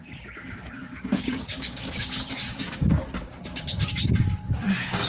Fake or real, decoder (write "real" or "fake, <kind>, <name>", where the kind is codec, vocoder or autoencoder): fake, codec, DAC